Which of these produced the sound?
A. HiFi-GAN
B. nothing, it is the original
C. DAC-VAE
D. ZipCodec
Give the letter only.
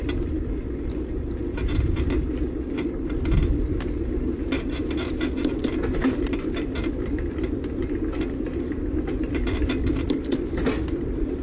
B